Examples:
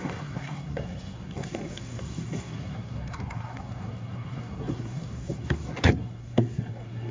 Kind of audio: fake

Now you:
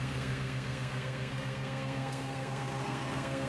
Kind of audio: fake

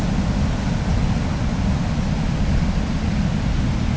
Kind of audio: real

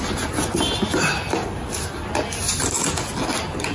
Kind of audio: real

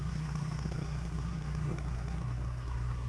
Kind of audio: fake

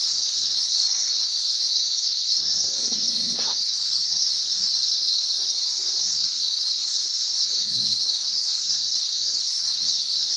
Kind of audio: fake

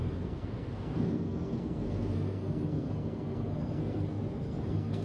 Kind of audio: fake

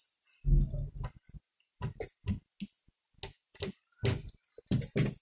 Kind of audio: real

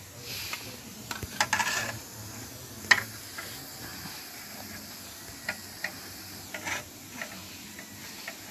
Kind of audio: real